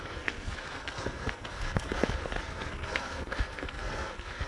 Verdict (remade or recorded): remade